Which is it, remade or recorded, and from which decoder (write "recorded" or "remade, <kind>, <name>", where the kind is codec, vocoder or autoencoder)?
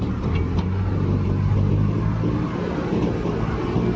recorded